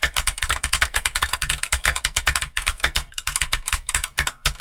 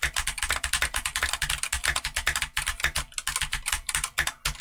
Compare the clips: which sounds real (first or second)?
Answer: second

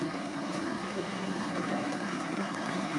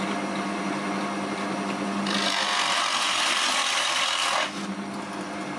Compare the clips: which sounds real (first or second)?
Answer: second